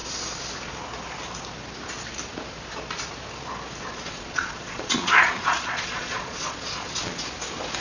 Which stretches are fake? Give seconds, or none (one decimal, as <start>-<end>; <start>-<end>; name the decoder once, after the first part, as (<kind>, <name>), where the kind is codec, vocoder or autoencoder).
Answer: 3.9-7.2 (vocoder, Vocos)